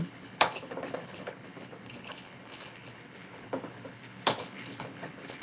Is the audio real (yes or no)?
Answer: no